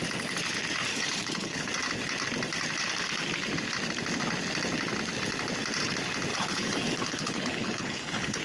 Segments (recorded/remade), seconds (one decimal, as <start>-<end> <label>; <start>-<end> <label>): 0.0-0.9 recorded; 0.9-1.7 remade; 1.7-6.3 recorded; 6.3-8.4 remade